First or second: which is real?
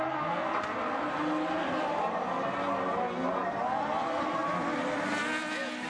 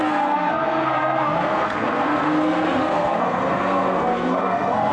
first